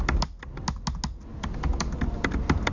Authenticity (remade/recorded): recorded